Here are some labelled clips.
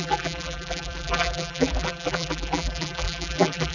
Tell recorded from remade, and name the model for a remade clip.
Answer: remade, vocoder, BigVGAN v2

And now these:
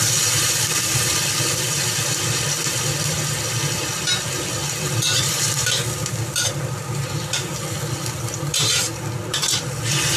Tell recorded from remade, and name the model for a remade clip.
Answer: remade, vocoder, BigVGAN v2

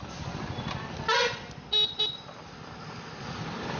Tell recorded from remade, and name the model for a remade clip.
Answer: recorded